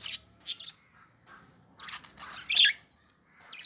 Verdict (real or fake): real